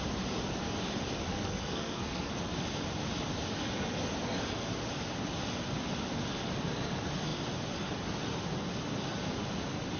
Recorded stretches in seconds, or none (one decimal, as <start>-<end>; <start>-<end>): 0.0-1.3; 2.3-10.0